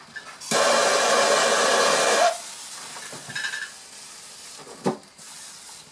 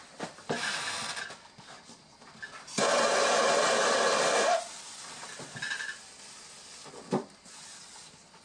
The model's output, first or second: second